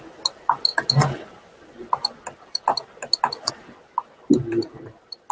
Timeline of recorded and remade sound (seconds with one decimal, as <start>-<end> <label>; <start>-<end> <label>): 0.0-5.3 recorded